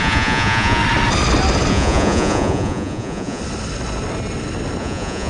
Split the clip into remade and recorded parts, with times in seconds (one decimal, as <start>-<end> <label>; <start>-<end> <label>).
0.0-0.8 remade; 0.8-1.7 recorded; 1.7-3.4 remade; 3.4-4.8 recorded; 4.8-5.3 remade

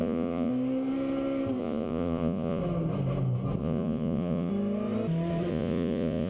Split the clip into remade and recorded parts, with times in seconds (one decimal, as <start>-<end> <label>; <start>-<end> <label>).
0.0-0.5 remade; 0.5-1.6 recorded; 1.6-2.6 remade; 2.6-3.6 recorded; 3.6-4.5 remade; 4.5-5.5 recorded; 5.5-6.3 remade

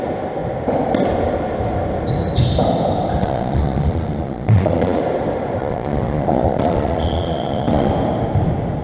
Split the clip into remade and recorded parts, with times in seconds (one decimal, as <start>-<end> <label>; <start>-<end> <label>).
0.0-3.2 recorded; 3.2-5.0 remade; 5.0-5.6 recorded; 5.6-7.9 remade; 7.9-8.8 recorded

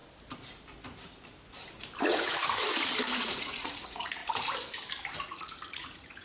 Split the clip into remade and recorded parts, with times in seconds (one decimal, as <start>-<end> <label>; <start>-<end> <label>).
0.0-2.0 recorded; 2.0-2.4 remade; 2.4-3.2 recorded; 3.2-4.2 remade; 4.2-5.2 recorded; 5.2-6.2 remade